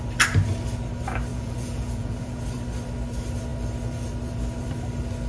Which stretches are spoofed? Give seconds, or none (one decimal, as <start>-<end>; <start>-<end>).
1.3-2.4